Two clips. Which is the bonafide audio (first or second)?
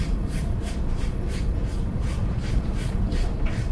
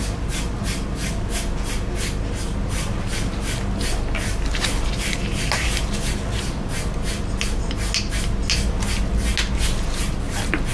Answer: second